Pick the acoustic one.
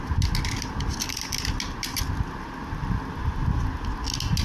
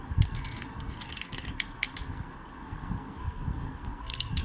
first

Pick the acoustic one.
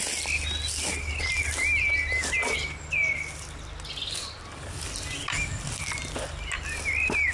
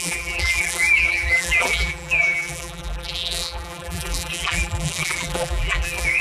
first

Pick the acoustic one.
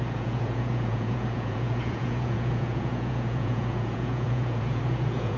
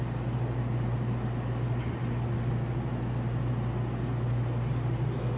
second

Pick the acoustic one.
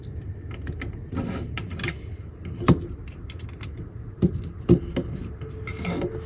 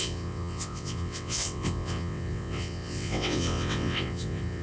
first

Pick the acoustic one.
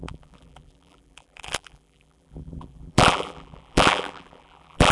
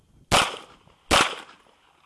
second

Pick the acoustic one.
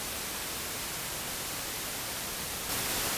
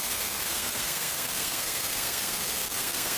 first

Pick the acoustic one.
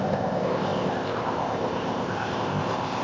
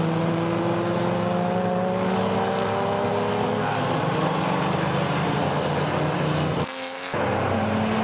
second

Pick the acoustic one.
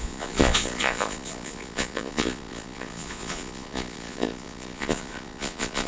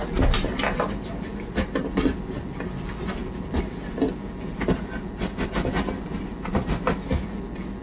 second